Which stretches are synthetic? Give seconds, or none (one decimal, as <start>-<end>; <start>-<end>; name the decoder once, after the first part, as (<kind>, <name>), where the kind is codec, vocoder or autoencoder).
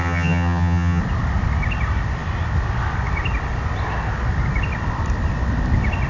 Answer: 0.0-1.0 (vocoder, HiFi-GAN)